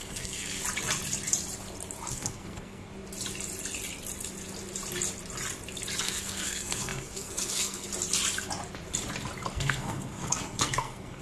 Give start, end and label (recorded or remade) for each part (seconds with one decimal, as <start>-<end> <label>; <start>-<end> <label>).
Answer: 0.0-0.6 remade; 0.6-2.1 recorded; 2.1-2.9 remade; 2.9-6.0 recorded; 6.0-7.9 remade; 7.9-9.5 recorded; 9.5-11.2 remade